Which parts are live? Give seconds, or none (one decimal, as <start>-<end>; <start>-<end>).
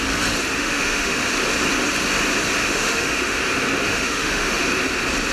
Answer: 0.0-0.6; 1.3-2.6; 3.4-3.8; 4.6-5.3